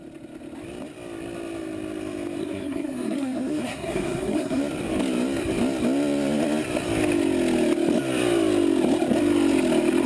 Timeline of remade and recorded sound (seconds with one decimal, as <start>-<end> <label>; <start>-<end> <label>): 0.0-2.4 recorded; 2.4-4.6 remade; 4.6-10.1 recorded